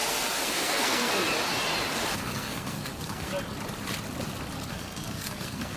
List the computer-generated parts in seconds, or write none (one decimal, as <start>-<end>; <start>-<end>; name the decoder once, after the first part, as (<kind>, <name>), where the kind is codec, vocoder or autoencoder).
0.0-1.1 (codec, SNAC); 2.1-3.3; 4.7-5.8